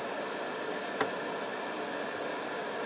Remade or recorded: recorded